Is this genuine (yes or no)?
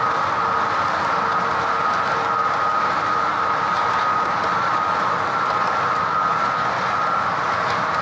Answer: yes